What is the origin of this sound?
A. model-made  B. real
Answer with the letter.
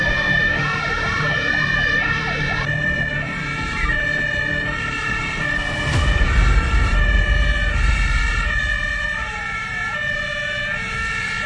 A